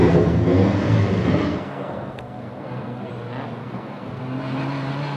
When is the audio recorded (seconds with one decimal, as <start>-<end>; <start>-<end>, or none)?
3.1-3.6; 4.2-5.2